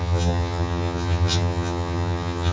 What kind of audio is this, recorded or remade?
remade